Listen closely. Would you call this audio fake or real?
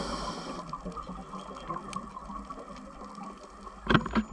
real